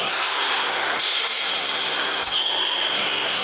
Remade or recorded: remade